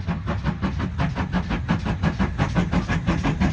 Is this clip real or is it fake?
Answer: real